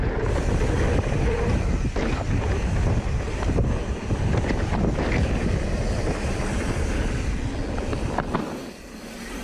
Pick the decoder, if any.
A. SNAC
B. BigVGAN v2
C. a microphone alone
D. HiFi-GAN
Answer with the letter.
C